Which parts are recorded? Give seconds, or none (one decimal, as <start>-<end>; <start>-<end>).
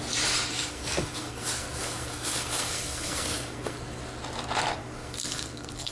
0.0-0.5; 4.0-4.8